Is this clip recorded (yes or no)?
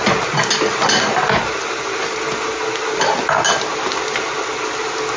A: yes